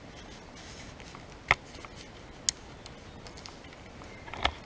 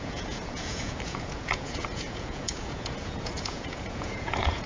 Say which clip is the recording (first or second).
first